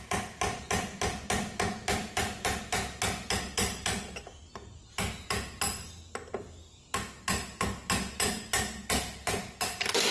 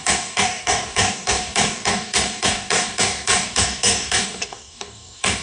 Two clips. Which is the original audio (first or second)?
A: first